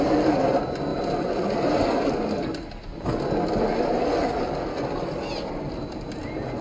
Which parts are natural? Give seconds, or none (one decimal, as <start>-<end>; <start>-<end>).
0.0-6.6